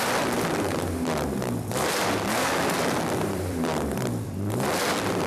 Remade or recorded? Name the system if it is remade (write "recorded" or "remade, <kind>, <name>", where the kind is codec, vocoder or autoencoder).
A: remade, vocoder, BigVGAN v2